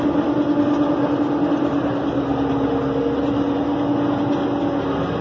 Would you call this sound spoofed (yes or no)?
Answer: no